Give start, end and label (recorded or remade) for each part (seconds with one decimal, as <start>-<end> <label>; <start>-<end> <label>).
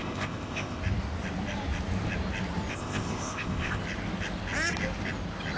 0.0-0.8 remade; 0.8-2.7 recorded; 2.7-3.8 remade; 3.8-5.6 recorded